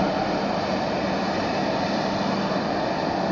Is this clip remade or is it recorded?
recorded